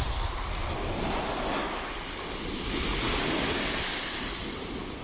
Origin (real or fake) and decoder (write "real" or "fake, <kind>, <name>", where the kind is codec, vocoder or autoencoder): real